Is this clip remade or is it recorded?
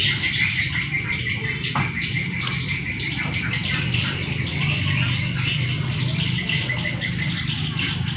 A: recorded